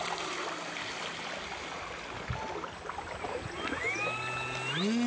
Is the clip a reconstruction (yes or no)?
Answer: no